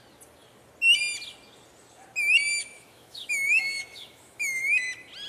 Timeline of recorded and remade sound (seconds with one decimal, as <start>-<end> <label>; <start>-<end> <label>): 0.0-2.6 recorded; 2.6-4.6 remade; 4.6-5.3 recorded